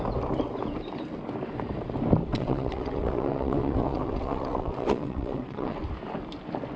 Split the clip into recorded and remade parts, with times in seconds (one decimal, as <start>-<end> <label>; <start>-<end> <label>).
0.0-2.3 recorded; 2.3-5.8 remade; 5.8-6.8 recorded